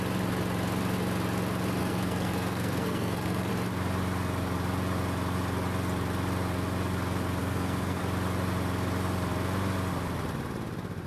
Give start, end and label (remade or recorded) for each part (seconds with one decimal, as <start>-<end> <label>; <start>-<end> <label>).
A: 0.0-1.8 recorded; 1.8-3.5 remade; 3.5-7.4 recorded; 7.4-8.0 remade; 8.0-11.1 recorded